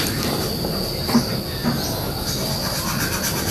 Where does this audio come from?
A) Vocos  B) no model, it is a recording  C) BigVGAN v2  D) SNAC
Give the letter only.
B